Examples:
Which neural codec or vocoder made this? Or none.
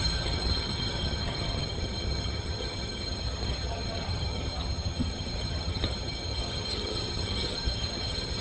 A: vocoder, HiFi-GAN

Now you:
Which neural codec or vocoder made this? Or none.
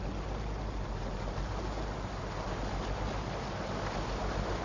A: none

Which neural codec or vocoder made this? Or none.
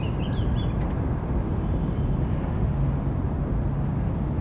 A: none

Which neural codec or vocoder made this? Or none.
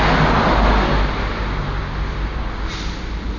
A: none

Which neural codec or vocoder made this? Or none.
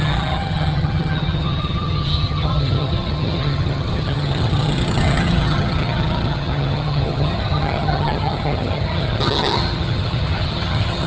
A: vocoder, HiFi-GAN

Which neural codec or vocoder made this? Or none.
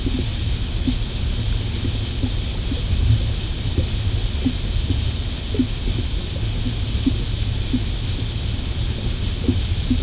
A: none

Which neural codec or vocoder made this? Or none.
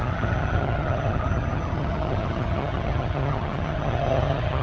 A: vocoder, HiFi-GAN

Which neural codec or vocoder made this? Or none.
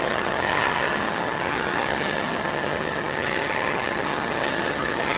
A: vocoder, HiFi-GAN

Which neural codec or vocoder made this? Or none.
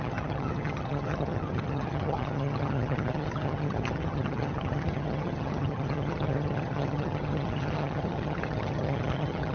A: vocoder, HiFi-GAN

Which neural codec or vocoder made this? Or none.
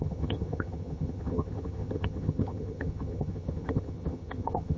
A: vocoder, HiFi-GAN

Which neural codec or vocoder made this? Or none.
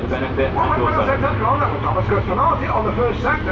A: none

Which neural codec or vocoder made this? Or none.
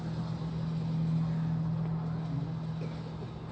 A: none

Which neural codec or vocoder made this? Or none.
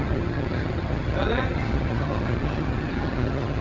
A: vocoder, HiFi-GAN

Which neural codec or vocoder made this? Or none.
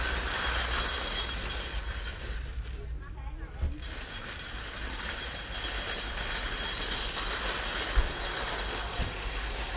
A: none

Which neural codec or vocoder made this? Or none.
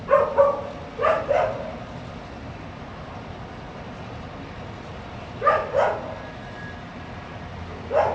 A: none